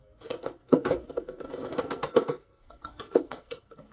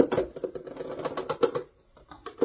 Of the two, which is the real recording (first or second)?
second